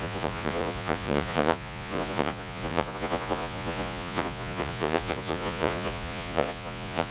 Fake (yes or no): yes